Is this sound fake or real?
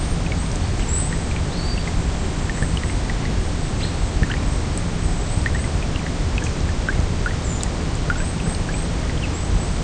real